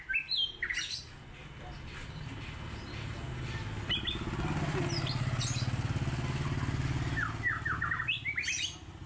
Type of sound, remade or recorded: recorded